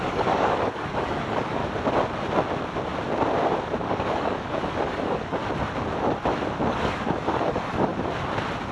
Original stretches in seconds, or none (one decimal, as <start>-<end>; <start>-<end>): 1.6-3.8; 5.4-6.7; 7.9-8.7